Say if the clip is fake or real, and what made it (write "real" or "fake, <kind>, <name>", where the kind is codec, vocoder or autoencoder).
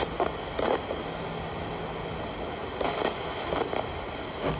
real